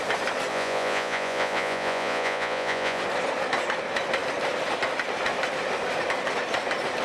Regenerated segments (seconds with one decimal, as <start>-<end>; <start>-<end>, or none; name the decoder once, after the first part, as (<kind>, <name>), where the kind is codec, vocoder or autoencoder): 0.5-3.0 (vocoder, Vocos)